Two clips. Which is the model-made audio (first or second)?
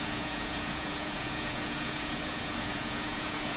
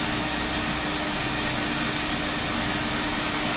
first